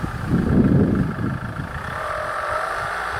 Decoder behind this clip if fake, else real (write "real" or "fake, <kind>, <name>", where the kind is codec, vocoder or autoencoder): real